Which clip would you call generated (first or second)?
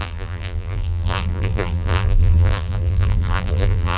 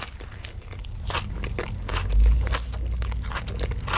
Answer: first